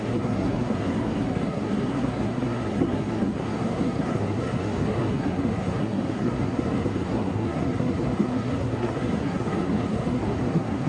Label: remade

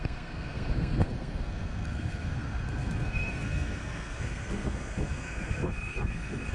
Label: remade